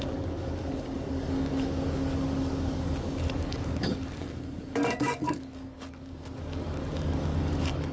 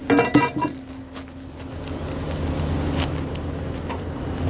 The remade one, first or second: first